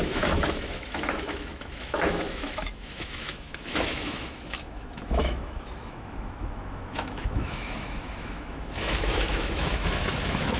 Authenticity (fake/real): fake